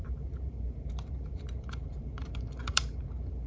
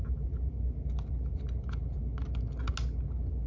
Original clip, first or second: second